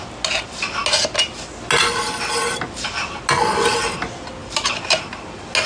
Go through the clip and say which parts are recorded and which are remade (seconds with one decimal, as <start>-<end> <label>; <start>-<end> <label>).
0.0-5.7 recorded